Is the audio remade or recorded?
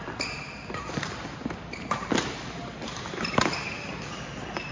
remade